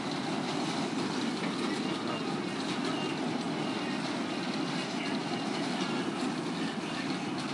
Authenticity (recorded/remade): recorded